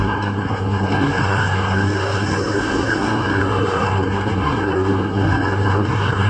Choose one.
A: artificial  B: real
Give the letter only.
A